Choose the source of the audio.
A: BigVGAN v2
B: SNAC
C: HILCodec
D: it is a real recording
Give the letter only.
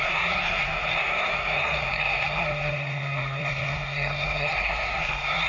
B